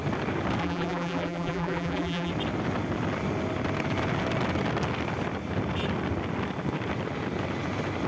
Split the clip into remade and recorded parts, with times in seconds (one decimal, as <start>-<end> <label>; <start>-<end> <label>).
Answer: 0.0-0.6 recorded; 0.6-2.3 remade; 2.3-8.1 recorded